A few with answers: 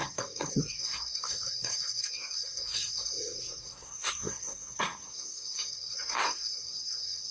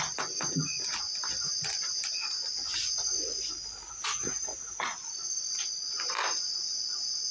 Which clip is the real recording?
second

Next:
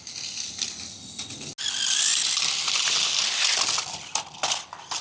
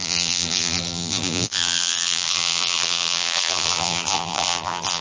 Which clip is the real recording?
first